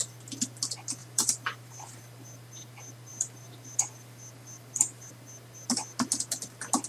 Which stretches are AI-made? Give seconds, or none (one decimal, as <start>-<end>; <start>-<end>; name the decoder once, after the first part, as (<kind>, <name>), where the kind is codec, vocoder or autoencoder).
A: 1.0-2.0 (vocoder, BigVGAN v2); 3.1-5.1